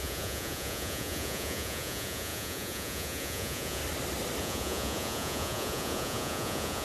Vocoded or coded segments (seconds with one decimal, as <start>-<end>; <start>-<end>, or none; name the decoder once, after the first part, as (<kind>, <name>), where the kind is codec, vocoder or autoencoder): 0.0-3.8 (vocoder, Vocos); 4.4-6.8